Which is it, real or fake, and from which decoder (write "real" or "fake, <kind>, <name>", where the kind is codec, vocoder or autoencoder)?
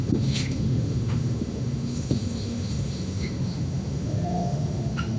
fake, autoencoder, DAC-VAE